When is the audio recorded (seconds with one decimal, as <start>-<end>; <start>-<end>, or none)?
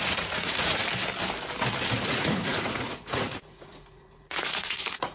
0.8-2.0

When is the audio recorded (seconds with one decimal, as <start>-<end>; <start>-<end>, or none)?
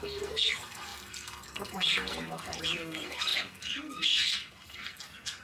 none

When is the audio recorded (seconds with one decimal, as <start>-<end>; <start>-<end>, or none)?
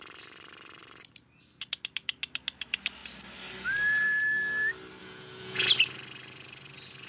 0.0-5.0; 5.7-7.1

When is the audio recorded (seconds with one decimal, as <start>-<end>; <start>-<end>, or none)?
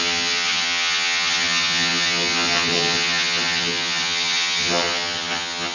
none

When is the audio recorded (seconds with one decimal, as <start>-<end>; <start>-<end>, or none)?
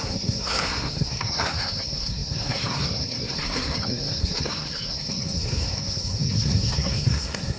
none